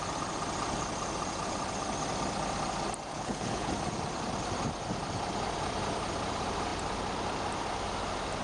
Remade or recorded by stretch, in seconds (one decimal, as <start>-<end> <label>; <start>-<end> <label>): 0.0-3.1 recorded; 3.1-3.7 remade; 3.7-8.4 recorded

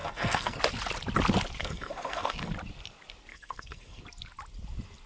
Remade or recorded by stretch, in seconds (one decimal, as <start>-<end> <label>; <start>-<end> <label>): 0.0-0.6 remade; 0.6-1.6 recorded; 1.6-2.5 remade; 2.5-3.3 recorded; 3.3-4.0 remade; 4.0-5.1 recorded